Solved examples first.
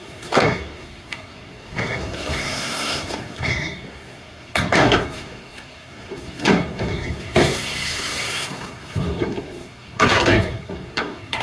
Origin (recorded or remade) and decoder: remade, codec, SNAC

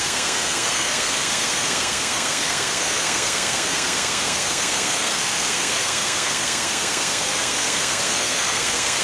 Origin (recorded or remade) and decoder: remade, codec, SNAC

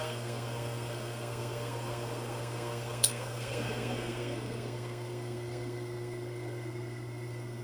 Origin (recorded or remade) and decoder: remade, codec, SNAC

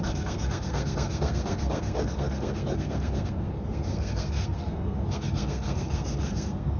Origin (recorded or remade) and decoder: remade, codec, SNAC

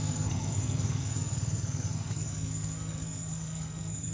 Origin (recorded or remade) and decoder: remade, codec, SNAC